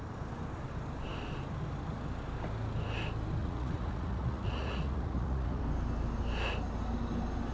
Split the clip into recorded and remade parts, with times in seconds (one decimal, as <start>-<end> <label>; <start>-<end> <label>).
0.0-3.4 recorded; 3.4-5.6 remade; 5.6-7.5 recorded